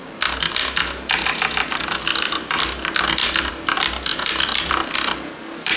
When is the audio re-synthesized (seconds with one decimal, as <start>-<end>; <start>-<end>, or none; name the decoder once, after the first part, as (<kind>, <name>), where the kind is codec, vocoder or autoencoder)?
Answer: none